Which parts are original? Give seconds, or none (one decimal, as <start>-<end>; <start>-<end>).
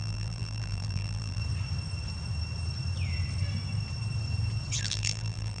1.4-4.8